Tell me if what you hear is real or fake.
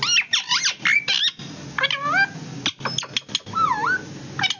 real